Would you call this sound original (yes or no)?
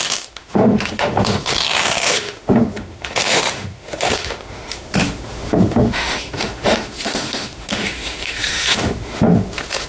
no